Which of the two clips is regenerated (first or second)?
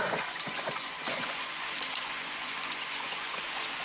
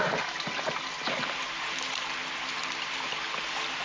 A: first